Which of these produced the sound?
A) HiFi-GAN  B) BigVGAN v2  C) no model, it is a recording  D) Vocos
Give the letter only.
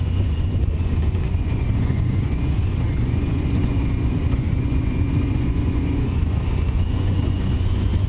D